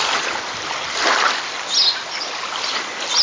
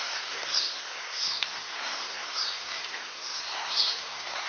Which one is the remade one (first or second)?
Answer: second